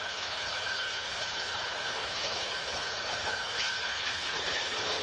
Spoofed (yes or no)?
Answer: yes